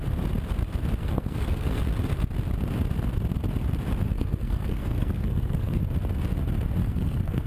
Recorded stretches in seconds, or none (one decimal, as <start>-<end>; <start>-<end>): 0.0-1.0; 1.8-4.1; 5.8-6.8